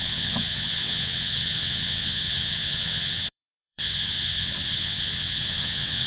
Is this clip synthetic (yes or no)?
yes